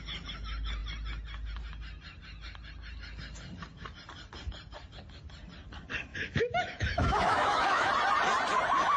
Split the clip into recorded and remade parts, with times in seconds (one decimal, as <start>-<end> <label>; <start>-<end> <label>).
0.0-6.1 recorded; 6.1-7.9 remade; 7.9-9.0 recorded

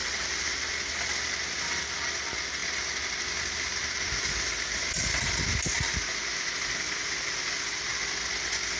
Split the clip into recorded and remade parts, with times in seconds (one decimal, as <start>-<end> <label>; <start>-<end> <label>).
0.0-8.8 recorded

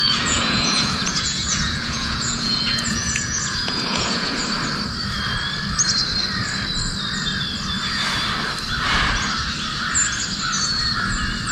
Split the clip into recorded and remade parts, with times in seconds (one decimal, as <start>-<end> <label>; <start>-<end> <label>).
0.0-4.4 remade; 4.4-11.5 recorded

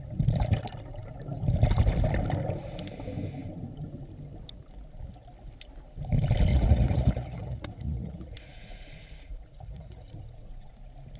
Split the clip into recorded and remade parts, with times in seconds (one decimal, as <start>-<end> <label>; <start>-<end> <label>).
0.0-6.5 recorded; 6.5-10.7 remade; 10.7-11.2 recorded